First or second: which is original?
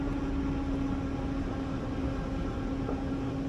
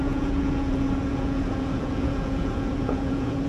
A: first